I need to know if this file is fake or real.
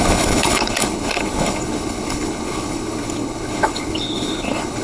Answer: fake